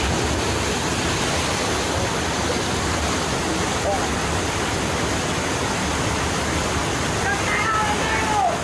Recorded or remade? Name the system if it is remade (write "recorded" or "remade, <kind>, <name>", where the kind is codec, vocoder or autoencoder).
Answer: recorded